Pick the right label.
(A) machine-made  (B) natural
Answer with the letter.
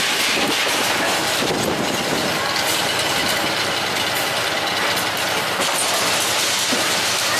A